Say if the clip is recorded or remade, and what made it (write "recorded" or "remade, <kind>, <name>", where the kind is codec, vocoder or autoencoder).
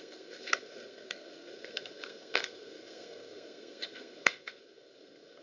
remade, codec, SNAC